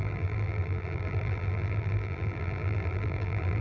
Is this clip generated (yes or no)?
yes